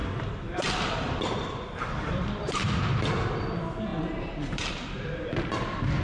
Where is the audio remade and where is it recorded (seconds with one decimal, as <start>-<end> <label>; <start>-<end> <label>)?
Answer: 0.0-2.8 remade; 2.8-3.9 recorded; 3.9-5.3 remade; 5.3-6.0 recorded